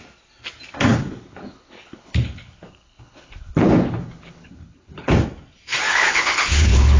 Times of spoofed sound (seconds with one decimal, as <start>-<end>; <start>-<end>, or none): 0.9-5.1; 5.9-7.0